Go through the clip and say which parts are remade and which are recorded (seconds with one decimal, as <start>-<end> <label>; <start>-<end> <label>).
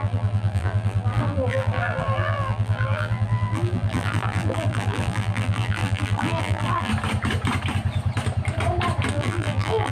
0.0-6.9 remade; 6.9-9.1 recorded; 9.1-9.9 remade